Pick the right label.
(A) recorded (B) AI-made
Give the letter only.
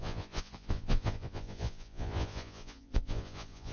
B